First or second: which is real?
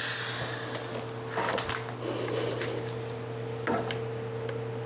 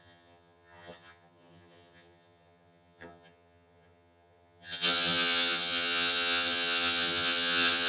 first